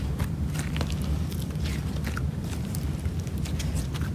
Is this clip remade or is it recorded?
recorded